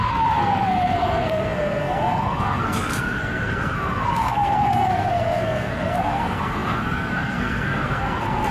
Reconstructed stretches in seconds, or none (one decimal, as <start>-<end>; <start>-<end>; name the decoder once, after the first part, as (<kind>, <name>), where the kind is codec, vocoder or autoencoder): 0.0-8.5 (codec, SNAC)